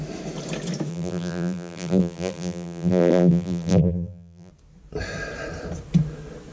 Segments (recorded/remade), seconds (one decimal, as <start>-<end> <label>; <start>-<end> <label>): 0.0-0.9 recorded; 0.9-4.5 remade; 4.5-6.5 recorded